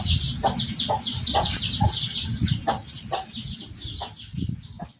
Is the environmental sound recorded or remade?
recorded